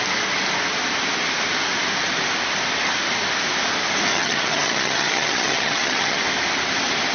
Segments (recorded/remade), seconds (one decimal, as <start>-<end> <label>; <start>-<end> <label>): 0.0-4.1 recorded; 4.1-6.2 remade; 6.2-7.1 recorded